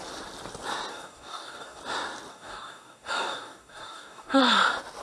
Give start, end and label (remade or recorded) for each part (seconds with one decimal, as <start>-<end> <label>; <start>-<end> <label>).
0.0-0.9 recorded; 0.9-1.8 remade; 1.8-2.3 recorded; 2.3-4.4 remade; 4.4-5.0 recorded